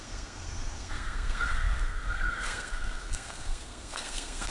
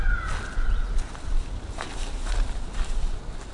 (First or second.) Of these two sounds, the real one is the second